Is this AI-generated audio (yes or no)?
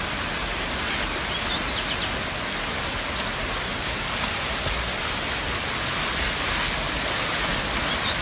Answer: no